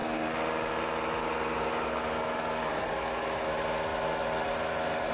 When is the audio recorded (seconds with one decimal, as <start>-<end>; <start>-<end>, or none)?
0.0-1.2; 3.5-5.1